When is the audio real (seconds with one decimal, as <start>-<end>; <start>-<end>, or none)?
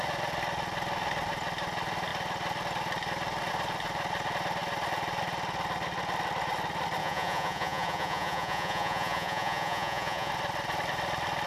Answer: 0.0-7.0; 10.3-11.5